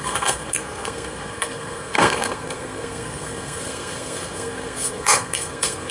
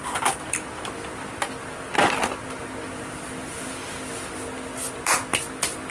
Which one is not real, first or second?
first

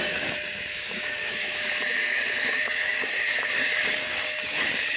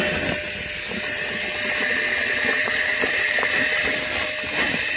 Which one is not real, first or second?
first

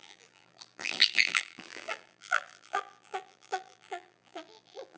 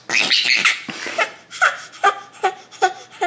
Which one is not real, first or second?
first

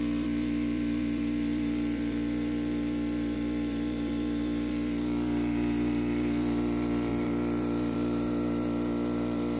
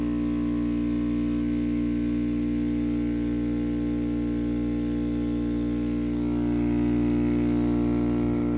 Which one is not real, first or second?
first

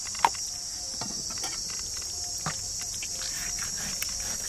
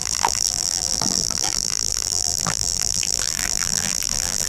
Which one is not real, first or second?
second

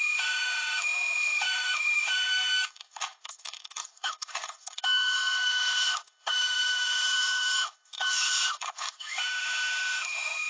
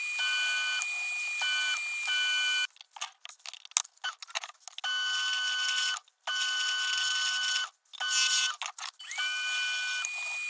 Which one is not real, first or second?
first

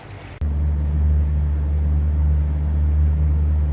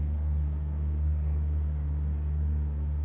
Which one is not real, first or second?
second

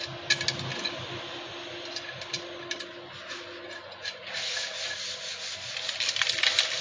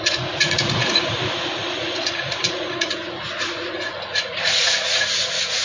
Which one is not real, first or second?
second